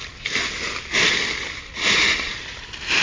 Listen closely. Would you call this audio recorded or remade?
recorded